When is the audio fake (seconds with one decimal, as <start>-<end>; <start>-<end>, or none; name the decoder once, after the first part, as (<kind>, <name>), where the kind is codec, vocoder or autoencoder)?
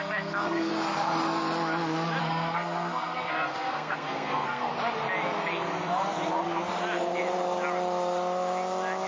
0.0-0.7 (codec, SNAC); 2.2-4.7